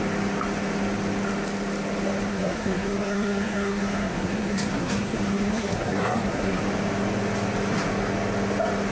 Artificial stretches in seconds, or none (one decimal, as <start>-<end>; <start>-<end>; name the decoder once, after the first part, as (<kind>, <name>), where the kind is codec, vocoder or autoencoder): 2.3-6.6 (codec, SNAC)